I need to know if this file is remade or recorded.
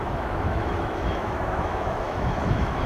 remade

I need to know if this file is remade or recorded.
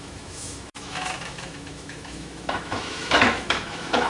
remade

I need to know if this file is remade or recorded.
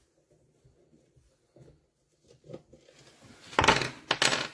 recorded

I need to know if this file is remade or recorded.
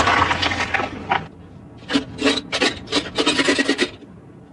recorded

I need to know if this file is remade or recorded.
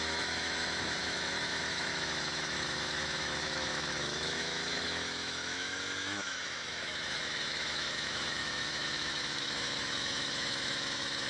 remade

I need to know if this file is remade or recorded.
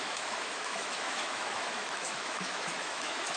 remade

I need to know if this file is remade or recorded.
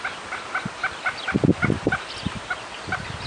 recorded